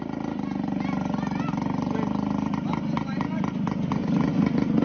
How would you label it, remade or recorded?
recorded